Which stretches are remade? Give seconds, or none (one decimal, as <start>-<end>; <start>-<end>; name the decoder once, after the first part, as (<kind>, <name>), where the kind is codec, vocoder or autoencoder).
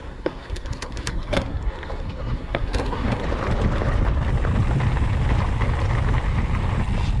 0.0-3.2 (codec, SNAC)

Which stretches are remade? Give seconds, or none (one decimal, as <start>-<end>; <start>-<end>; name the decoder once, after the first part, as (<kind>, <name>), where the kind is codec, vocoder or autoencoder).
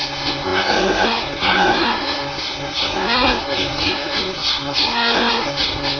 0.0-6.0 (codec, SNAC)